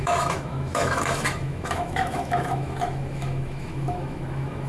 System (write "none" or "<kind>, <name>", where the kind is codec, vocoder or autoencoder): autoencoder, DAC-VAE